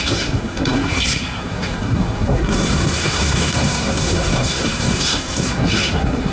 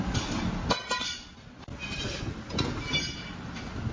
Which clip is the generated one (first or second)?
first